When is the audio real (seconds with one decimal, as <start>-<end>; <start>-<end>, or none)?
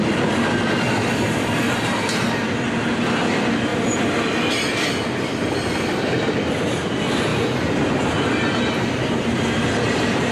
0.0-3.7; 4.2-10.3